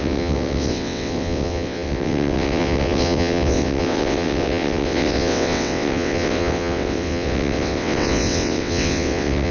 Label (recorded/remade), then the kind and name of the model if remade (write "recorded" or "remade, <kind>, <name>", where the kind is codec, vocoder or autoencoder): remade, vocoder, WaveNeXt